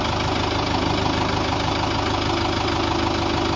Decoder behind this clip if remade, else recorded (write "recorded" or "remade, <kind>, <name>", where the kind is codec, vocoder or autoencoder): recorded